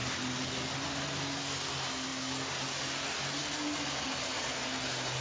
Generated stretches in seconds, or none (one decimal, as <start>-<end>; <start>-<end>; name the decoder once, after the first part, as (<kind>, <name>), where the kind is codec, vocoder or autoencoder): none